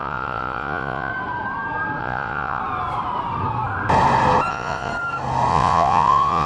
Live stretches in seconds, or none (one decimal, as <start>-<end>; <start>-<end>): 1.1-2.0; 2.6-4.5; 4.9-5.5